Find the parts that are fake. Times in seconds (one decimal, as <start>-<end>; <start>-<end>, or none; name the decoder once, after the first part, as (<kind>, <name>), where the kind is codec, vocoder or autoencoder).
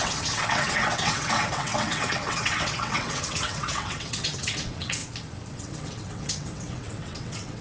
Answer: 0.0-5.0 (vocoder, WaveNeXt); 5.5-7.6